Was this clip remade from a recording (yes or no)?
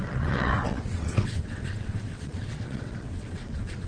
yes